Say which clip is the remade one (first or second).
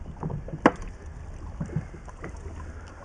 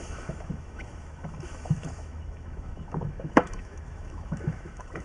second